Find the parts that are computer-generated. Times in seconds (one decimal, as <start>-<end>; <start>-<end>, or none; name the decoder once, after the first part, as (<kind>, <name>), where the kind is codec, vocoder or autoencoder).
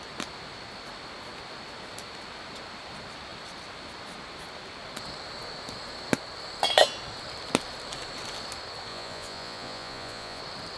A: 8.9-10.4 (vocoder, Vocos)